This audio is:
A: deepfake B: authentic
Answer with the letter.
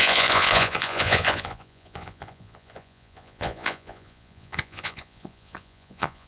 A